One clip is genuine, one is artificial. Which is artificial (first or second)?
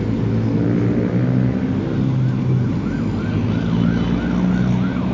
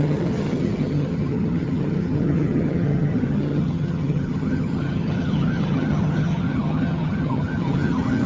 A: second